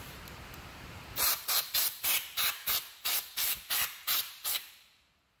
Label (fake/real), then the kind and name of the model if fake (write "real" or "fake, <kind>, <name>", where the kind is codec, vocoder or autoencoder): fake, vocoder, BigVGAN v2